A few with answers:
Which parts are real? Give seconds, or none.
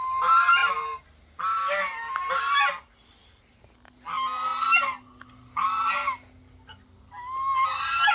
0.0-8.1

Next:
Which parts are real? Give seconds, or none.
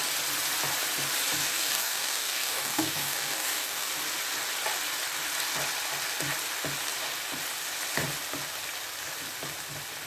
0.0-1.4; 3.9-10.1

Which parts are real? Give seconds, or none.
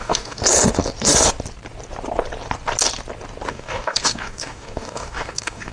0.4-3.5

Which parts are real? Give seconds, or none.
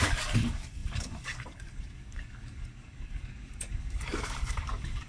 none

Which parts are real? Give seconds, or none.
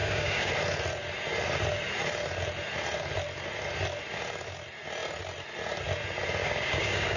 0.5-6.4